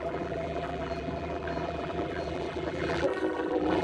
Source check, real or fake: fake